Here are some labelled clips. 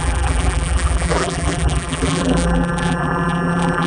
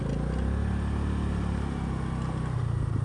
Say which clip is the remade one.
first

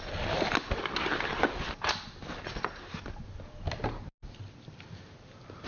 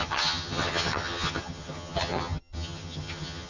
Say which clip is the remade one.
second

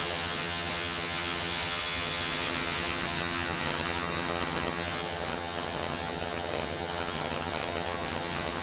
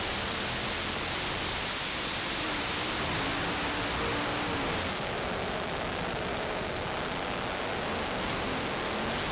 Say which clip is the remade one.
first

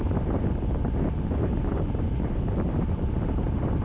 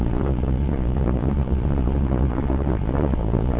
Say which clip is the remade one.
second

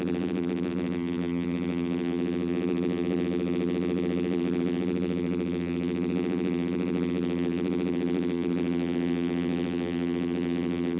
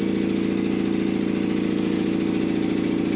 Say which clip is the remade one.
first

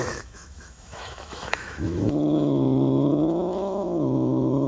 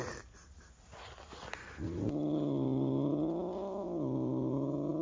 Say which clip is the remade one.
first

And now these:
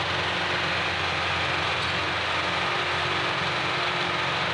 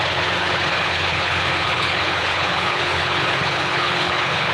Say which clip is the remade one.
second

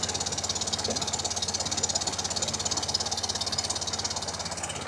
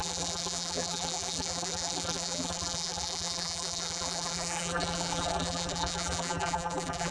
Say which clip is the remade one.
second